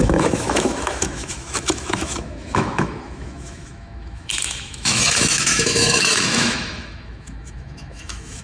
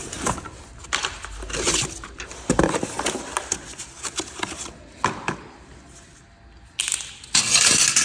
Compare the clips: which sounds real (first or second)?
second